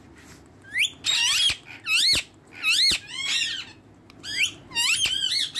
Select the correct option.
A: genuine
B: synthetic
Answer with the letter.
A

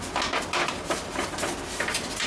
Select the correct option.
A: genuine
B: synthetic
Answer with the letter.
A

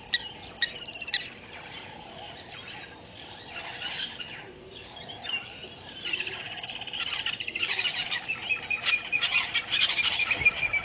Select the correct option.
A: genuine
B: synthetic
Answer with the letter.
B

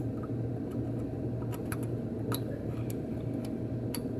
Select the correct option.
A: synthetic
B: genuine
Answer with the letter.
B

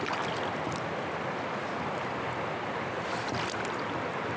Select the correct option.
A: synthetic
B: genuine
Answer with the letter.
B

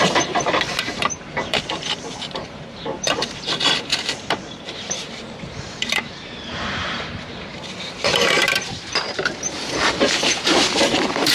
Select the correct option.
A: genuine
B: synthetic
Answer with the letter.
B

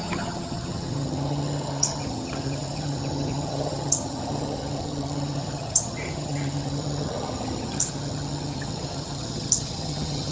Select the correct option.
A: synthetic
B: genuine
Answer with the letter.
A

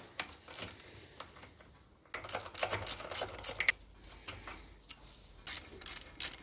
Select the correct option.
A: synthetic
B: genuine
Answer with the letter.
B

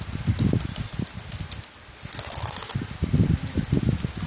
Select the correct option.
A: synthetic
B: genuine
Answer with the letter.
B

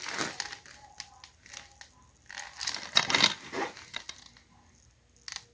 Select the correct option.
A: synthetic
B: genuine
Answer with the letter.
B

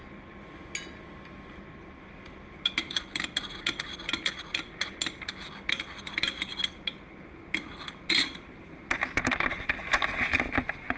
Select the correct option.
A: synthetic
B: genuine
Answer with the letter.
B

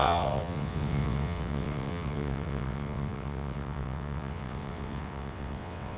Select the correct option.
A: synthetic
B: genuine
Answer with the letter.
A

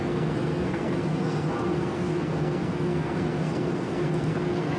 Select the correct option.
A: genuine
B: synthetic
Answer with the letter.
B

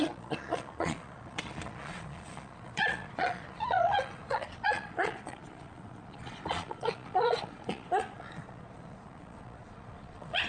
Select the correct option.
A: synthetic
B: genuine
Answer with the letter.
A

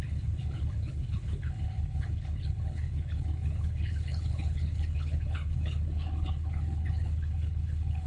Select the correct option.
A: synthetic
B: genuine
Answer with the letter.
A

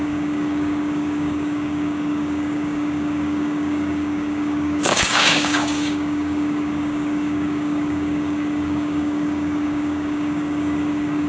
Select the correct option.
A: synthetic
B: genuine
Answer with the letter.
A